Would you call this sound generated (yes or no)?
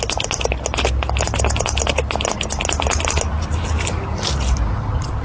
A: no